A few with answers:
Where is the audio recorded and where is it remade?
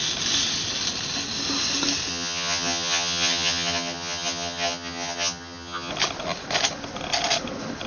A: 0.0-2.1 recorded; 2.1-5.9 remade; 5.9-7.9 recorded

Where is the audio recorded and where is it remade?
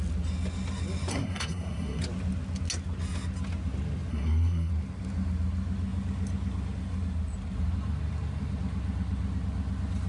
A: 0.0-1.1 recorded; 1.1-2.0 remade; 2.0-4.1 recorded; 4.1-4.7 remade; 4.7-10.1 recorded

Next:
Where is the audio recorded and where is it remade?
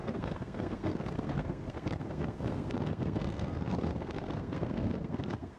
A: 0.0-5.6 remade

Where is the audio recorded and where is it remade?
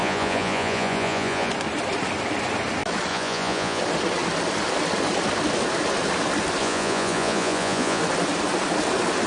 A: 0.0-1.5 remade; 1.5-3.1 recorded; 3.1-3.8 remade; 3.8-6.6 recorded; 6.6-8.0 remade; 8.0-9.3 recorded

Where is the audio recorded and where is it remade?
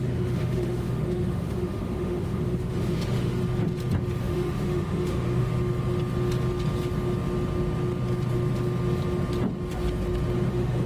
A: 0.0-3.4 remade; 3.4-4.2 recorded; 4.2-5.5 remade; 5.5-10.5 recorded; 10.5-10.9 remade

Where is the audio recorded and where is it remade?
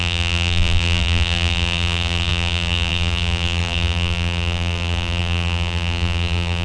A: 0.0-6.6 remade